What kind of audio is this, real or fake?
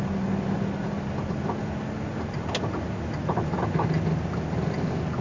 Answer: real